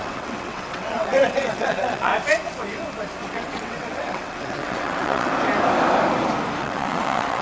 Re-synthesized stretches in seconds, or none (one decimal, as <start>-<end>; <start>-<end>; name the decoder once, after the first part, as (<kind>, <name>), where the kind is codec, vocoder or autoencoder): 0.0-2.1 (vocoder, WaveNeXt); 3.2-5.3; 6.6-7.4